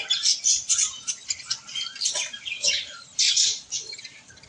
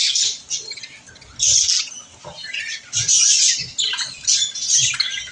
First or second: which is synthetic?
first